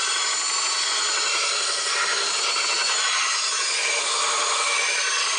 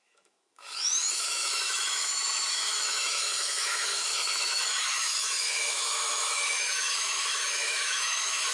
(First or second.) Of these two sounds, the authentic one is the first